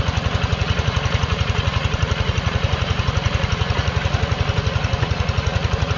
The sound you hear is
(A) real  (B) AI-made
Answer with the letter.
B